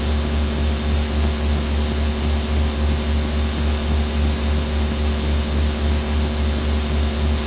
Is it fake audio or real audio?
real